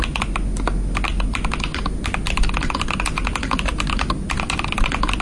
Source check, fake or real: real